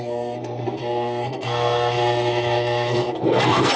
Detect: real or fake fake